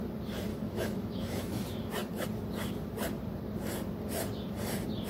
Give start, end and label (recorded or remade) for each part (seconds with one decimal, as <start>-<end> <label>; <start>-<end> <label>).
0.0-0.5 recorded; 0.5-1.6 remade; 1.6-5.1 recorded